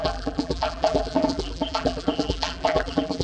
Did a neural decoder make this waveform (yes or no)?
yes